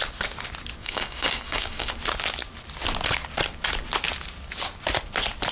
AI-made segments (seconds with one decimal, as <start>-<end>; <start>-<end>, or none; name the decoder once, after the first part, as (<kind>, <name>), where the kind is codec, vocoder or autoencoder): 0.8-1.9 (codec, DAC)